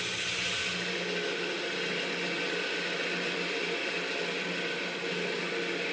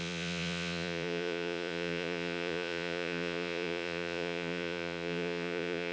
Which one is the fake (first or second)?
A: second